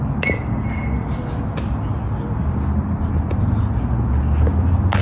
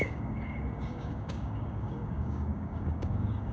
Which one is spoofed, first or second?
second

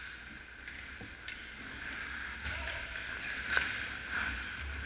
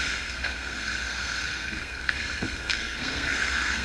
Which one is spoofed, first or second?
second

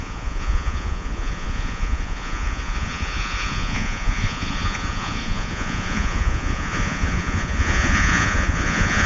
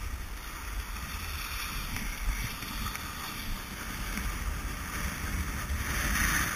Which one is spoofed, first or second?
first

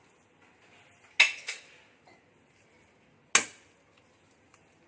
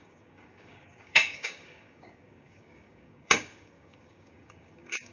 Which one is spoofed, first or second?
second